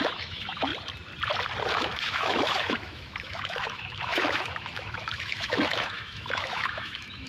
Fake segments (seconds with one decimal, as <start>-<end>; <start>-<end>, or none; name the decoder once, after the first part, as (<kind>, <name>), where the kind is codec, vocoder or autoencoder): 0.0-0.7 (autoencoder, DAC-VAE); 1.7-7.3